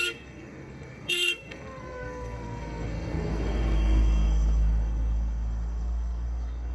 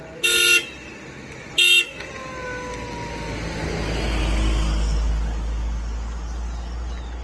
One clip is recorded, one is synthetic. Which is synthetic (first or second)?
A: first